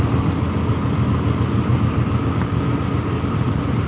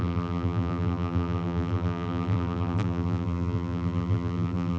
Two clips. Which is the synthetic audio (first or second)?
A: second